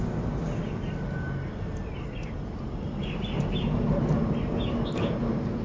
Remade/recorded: recorded